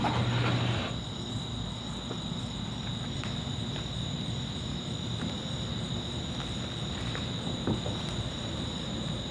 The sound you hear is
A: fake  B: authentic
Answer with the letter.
B